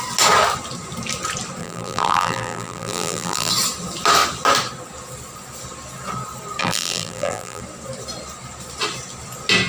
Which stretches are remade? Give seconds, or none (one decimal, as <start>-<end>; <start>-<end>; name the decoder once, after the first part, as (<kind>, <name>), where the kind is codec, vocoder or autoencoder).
1.6-3.5 (vocoder, BigVGAN v2); 6.6-7.6